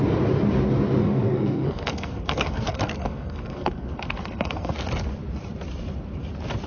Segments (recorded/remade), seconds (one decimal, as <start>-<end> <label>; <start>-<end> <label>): 0.0-1.0 recorded; 1.0-4.7 remade; 4.7-6.7 recorded